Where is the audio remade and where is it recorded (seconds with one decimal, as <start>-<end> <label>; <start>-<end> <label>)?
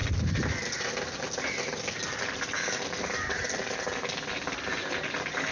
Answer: 0.0-5.5 recorded